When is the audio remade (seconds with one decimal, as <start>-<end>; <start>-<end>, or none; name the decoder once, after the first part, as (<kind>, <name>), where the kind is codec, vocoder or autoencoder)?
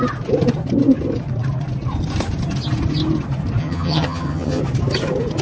3.6-4.6 (vocoder, HiFi-GAN)